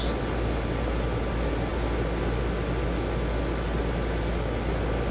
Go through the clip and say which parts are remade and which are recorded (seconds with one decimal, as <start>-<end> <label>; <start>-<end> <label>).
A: 0.0-5.1 recorded